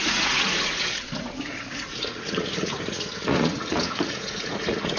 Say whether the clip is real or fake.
fake